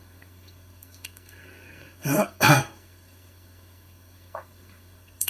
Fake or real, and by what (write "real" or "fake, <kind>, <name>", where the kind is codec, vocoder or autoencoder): fake, codec, SNAC